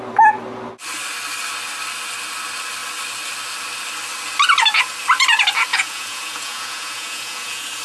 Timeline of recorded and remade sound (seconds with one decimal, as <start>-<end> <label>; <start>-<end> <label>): 0.0-5.7 recorded; 5.7-7.8 remade